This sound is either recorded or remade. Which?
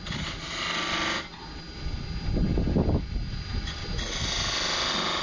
recorded